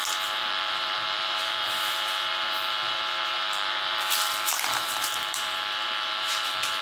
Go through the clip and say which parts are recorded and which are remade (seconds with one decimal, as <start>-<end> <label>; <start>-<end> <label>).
0.0-6.8 remade